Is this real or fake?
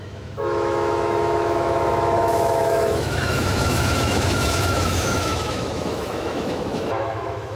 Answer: fake